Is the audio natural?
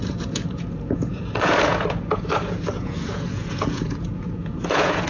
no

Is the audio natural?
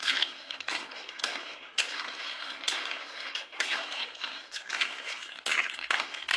no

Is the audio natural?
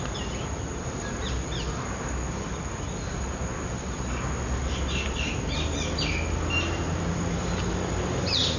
yes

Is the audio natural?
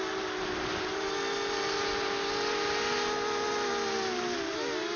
yes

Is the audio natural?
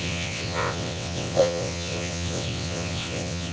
no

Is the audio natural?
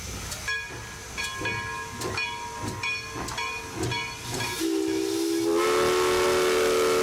yes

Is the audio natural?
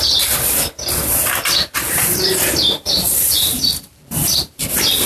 yes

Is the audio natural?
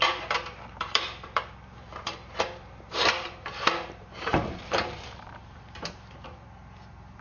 no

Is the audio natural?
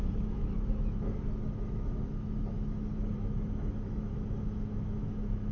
no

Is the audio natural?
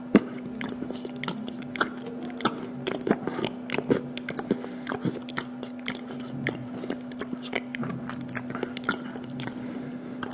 yes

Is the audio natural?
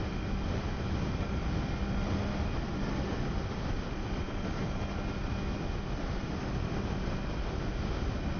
yes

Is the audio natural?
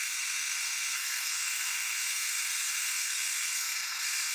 no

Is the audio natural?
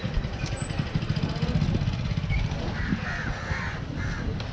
yes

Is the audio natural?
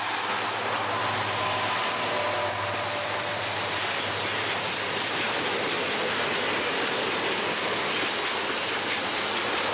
yes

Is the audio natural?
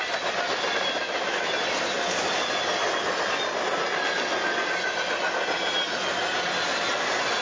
yes